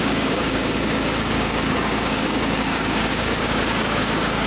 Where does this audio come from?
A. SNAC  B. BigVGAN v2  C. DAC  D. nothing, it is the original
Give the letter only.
C